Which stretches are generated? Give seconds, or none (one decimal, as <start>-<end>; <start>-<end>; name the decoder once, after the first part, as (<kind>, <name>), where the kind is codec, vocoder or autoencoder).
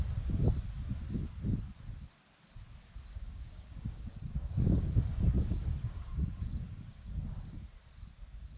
3.1-7.2 (codec, DAC)